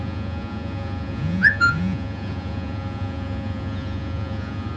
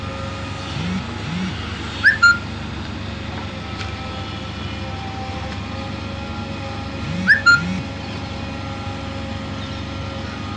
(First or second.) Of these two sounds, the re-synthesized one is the first